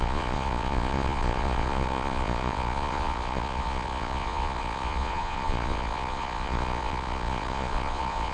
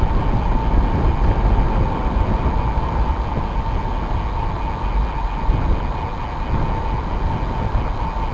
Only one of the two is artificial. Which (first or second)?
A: first